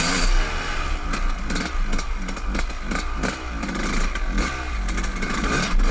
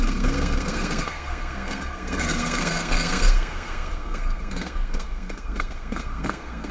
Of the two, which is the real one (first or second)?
first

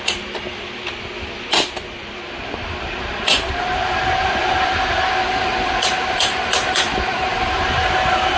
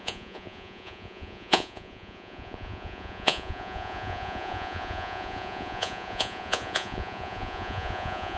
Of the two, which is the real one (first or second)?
first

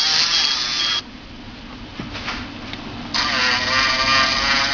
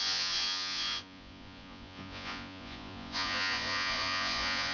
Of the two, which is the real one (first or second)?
first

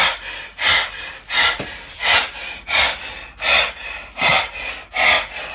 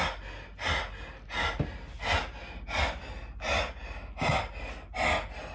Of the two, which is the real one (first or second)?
second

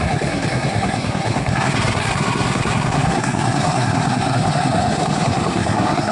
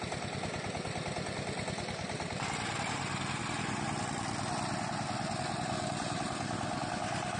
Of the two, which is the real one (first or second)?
second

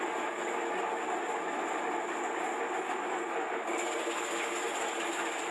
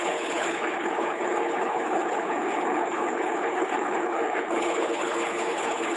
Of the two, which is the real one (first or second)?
first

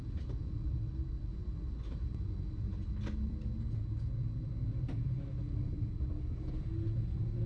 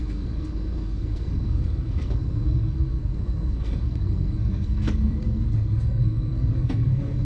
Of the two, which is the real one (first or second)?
first